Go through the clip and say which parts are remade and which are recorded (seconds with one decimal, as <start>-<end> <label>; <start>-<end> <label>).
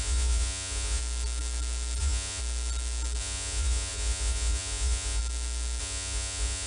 0.0-1.0 remade; 1.0-2.0 recorded; 2.0-2.4 remade; 2.4-3.2 recorded; 3.2-5.2 remade; 5.2-5.8 recorded; 5.8-6.7 remade